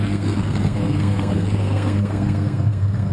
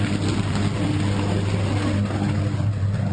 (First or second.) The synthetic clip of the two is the first